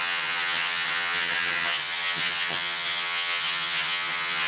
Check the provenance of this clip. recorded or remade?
remade